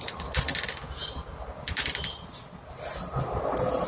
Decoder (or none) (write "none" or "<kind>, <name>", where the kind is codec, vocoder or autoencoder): none